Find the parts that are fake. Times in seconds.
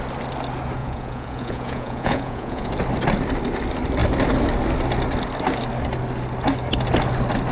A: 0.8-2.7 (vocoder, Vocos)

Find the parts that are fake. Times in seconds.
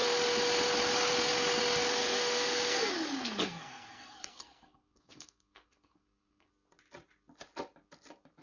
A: 2.0-2.9 (codec, SNAC); 3.4-6.5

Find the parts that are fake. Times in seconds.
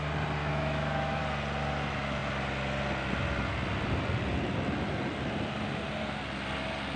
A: 0.4-1.2 (autoencoder, DAC-VAE)